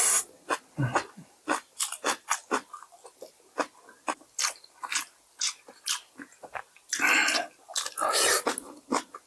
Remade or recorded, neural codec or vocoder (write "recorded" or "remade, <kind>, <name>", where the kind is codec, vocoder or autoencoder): recorded